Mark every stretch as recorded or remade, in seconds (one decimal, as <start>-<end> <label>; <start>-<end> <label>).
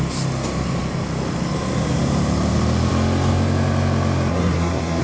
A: 0.0-4.3 recorded; 4.3-5.0 remade